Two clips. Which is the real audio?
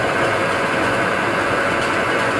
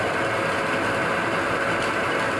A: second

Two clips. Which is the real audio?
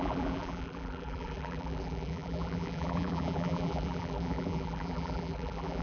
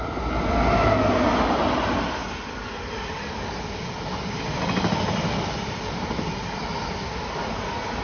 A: second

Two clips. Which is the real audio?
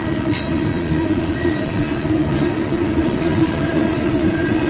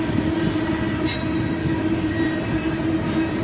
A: second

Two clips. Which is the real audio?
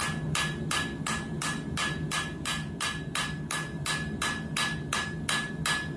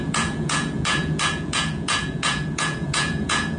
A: first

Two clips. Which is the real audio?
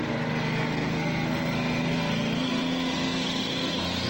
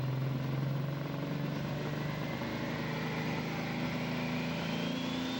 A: second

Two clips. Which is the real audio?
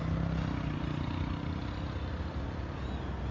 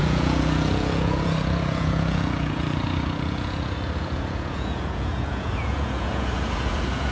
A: first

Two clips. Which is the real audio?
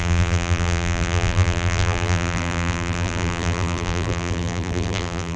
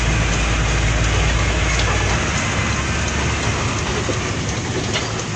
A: second